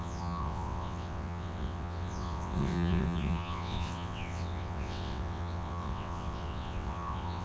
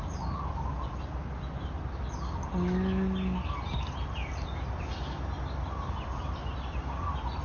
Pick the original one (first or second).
second